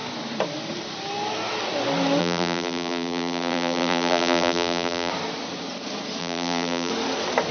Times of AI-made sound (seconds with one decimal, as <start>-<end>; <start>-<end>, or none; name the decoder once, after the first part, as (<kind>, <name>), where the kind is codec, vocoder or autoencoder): 2.2-5.1 (vocoder, BigVGAN v2); 6.2-6.9